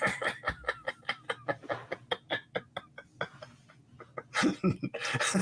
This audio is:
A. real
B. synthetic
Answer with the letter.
A